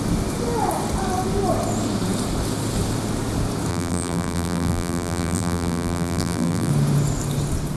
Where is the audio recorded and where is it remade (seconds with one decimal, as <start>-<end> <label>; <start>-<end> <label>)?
0.0-3.7 recorded; 3.7-6.7 remade; 6.7-7.8 recorded

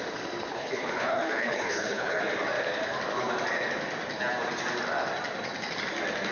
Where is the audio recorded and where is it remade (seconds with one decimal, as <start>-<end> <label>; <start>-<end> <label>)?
0.0-0.5 recorded; 0.5-2.2 remade; 2.2-6.3 recorded

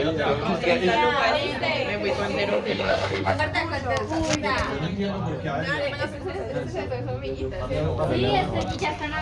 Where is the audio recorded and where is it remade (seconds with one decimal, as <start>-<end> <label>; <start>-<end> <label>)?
0.0-2.5 recorded; 2.5-3.4 remade; 3.4-9.2 recorded

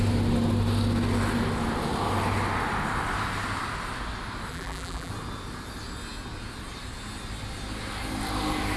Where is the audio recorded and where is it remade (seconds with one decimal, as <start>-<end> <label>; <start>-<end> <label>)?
0.0-4.5 recorded; 4.5-5.1 remade; 5.1-8.8 recorded

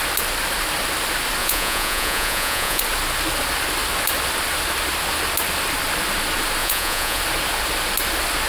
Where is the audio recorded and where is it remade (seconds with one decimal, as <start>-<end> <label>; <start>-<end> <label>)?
0.0-1.4 recorded; 1.4-2.8 remade; 2.8-6.6 recorded; 6.6-7.2 remade; 7.2-8.5 recorded